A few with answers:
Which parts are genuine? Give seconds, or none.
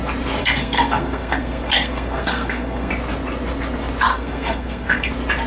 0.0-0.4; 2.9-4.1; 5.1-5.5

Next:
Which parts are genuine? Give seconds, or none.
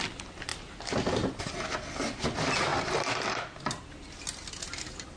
0.0-5.2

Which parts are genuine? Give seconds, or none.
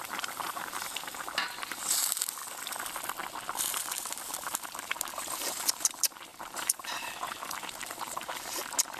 2.4-3.8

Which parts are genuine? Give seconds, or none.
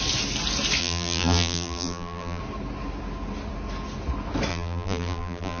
0.0-0.8; 2.4-4.5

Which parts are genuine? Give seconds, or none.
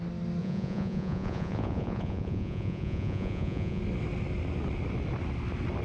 0.0-0.4; 3.8-5.8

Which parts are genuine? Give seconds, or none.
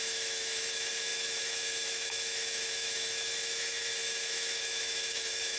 none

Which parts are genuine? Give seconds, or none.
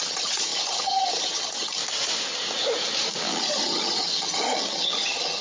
1.8-3.4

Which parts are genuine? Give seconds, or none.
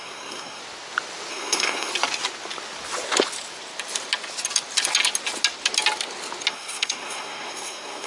0.6-1.3; 1.9-6.5